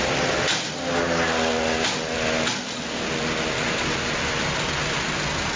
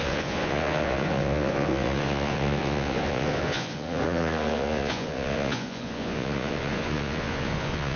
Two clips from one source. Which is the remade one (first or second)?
second